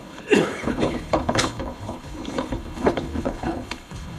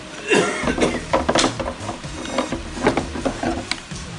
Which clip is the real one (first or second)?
second